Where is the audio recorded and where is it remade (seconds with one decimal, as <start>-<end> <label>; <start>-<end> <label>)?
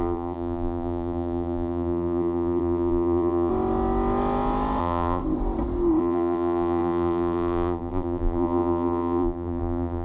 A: 0.0-3.5 remade; 3.5-4.8 recorded; 4.8-5.2 remade; 5.2-6.0 recorded; 6.0-10.0 remade